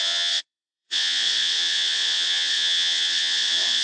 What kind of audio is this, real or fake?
fake